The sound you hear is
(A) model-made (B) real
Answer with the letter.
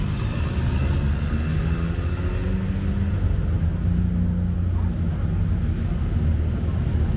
B